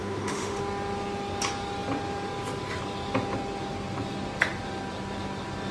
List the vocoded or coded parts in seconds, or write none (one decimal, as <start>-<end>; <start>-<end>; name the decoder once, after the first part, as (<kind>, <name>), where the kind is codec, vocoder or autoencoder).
0.0-0.6 (autoencoder, DAC-VAE)

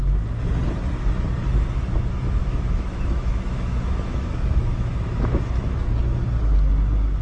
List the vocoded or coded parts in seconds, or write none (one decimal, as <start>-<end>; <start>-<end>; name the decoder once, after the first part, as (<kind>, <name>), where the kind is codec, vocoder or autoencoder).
2.4-5.9 (autoencoder, DAC-VAE)

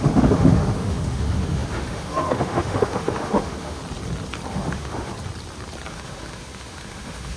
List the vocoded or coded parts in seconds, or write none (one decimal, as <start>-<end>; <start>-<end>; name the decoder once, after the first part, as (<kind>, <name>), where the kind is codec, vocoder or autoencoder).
0.0-3.8 (autoencoder, DAC-VAE); 4.5-5.1; 5.9-7.4

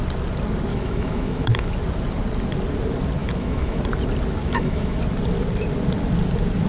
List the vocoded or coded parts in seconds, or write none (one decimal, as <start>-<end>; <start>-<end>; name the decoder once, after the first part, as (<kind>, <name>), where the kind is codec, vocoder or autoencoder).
0.7-1.7 (autoencoder, DAC-VAE); 3.2-3.8; 4.4-5.0

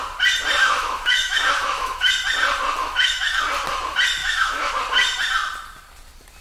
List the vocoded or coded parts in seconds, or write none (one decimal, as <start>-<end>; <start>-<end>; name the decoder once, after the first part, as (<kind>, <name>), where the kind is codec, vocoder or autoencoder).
0.6-2.1 (autoencoder, DAC-VAE); 2.8-3.4; 4.2-4.7

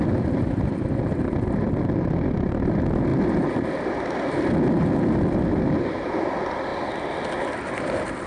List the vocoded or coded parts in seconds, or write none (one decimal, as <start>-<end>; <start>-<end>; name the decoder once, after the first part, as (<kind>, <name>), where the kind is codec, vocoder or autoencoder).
none

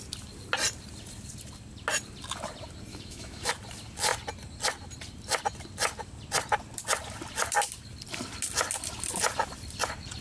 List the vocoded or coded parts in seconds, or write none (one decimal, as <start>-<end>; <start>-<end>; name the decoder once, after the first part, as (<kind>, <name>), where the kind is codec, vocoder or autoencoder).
2.9-3.5 (autoencoder, DAC-VAE)

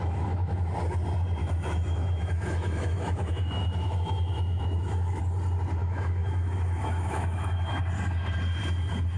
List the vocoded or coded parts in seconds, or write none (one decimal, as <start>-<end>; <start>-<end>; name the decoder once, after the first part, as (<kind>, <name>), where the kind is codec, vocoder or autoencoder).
0.0-0.7 (autoencoder, DAC-VAE); 1.4-5.2; 5.8-7.8